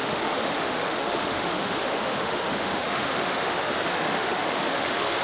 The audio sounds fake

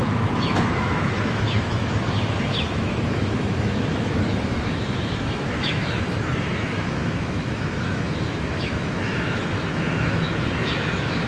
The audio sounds fake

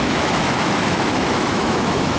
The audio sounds fake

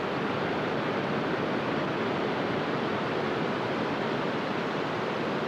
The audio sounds real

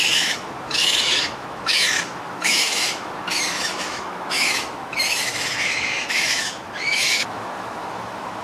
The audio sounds fake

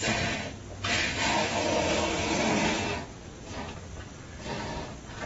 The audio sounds real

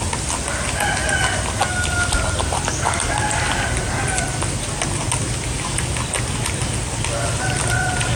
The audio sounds real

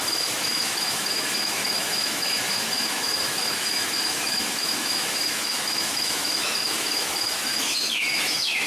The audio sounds fake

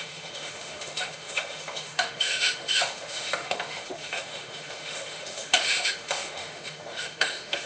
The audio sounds fake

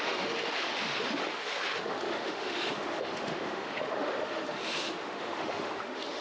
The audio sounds fake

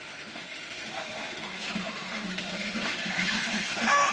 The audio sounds fake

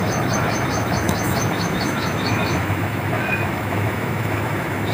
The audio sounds fake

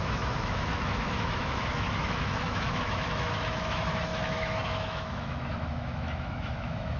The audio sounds fake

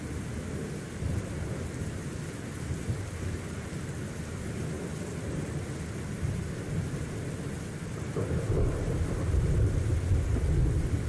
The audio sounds real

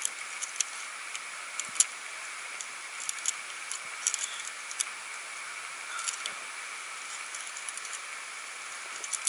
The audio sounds real